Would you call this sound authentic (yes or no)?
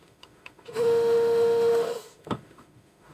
no